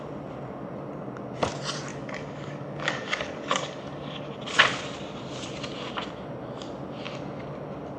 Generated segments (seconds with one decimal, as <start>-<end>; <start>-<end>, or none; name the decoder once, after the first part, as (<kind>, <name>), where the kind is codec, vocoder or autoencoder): 1.9-4.2 (codec, DAC)